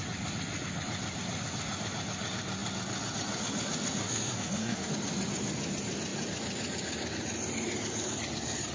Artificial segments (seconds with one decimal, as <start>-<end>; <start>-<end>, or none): 4.0-4.9

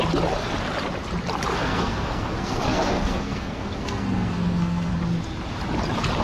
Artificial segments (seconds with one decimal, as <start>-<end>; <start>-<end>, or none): 1.5-4.9

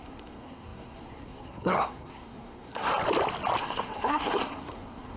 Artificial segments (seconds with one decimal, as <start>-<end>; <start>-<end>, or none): 0.0-2.9; 3.6-5.2

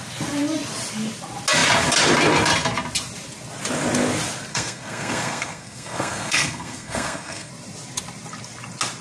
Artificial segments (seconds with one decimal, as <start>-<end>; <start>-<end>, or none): 4.5-7.5

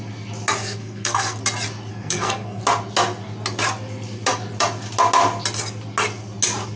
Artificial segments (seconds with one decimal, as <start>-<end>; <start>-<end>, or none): 0.6-1.4; 1.9-2.6

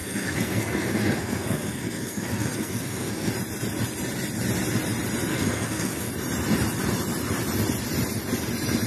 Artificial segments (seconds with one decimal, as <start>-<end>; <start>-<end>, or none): 0.0-3.3; 5.3-6.1

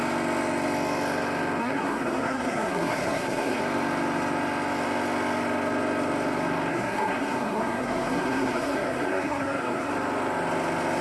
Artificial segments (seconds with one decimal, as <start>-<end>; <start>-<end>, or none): 1.6-3.6; 6.7-9.9